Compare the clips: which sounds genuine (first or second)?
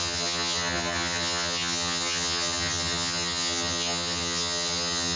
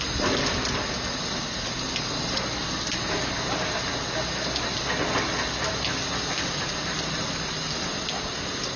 second